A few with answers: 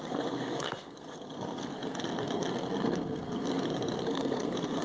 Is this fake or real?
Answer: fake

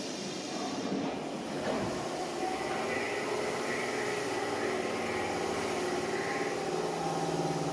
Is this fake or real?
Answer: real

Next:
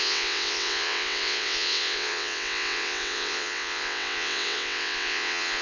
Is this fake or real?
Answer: fake